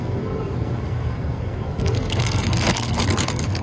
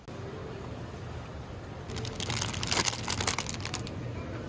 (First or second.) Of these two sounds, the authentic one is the second